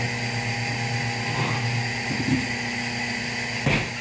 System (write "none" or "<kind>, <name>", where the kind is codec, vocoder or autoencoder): none